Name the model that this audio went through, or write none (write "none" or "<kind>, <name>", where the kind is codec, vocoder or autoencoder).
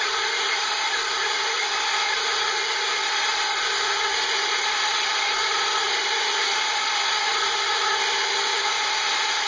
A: none